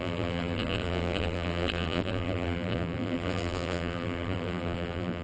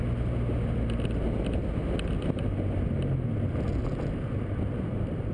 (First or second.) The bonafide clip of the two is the second